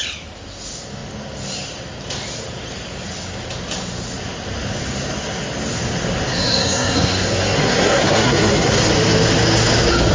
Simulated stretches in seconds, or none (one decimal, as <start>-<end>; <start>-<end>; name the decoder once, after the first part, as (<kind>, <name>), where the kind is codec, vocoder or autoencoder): 6.3-8.9 (codec, SNAC)